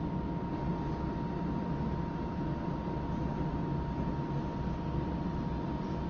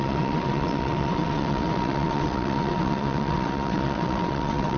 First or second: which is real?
first